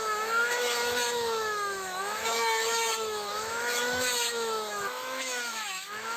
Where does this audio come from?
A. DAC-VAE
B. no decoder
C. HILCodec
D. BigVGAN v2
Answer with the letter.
A